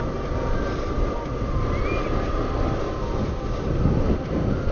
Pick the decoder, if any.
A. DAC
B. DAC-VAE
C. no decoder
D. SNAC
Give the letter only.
C